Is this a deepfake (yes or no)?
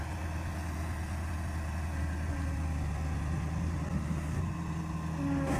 no